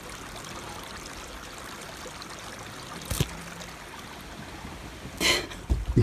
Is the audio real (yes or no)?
yes